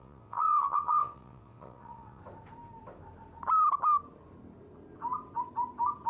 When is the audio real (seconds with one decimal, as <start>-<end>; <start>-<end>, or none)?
2.2-6.1